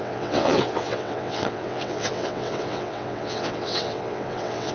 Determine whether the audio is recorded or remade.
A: remade